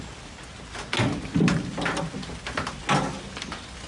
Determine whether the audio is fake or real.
real